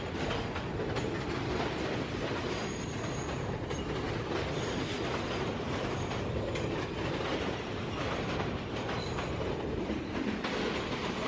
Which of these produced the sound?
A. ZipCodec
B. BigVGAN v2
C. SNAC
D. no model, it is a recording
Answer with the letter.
D